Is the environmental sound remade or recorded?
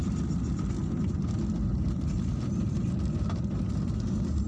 recorded